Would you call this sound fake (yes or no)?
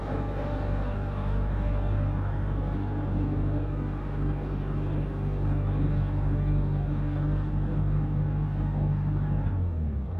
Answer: yes